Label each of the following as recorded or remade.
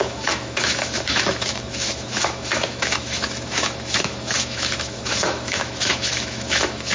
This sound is remade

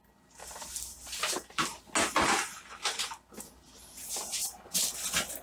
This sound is recorded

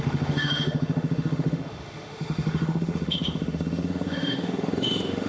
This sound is remade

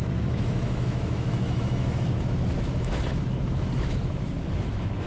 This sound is remade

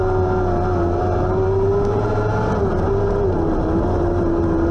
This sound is recorded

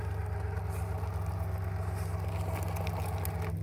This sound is recorded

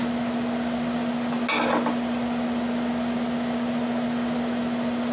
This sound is recorded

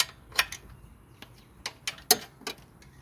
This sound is recorded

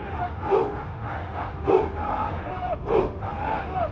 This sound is remade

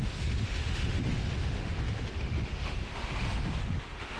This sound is remade